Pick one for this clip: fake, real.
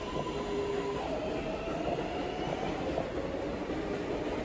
real